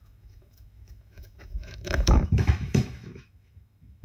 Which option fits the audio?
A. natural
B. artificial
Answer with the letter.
B